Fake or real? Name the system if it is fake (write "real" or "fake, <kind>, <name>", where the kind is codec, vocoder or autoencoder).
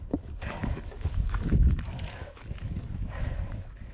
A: fake, codec, DAC